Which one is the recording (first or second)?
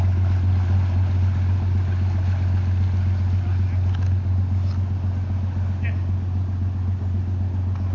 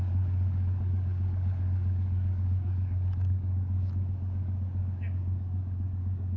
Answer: first